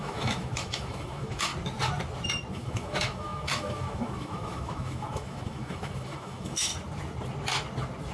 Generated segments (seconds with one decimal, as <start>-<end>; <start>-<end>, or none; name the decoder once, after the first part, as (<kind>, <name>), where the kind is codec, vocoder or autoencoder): 0.0-1.5 (autoencoder, DAC-VAE); 2.5-6.7